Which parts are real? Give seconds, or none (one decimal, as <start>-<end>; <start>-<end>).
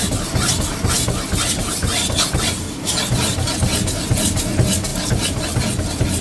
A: 0.0-6.2